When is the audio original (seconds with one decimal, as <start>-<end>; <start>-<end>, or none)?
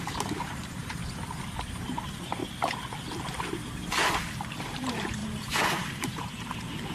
1.0-1.7; 2.4-4.6